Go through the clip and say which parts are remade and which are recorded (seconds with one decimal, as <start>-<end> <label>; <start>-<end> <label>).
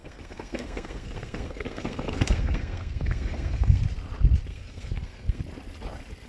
0.0-3.8 remade; 3.8-4.5 recorded; 4.5-5.4 remade; 5.4-6.3 recorded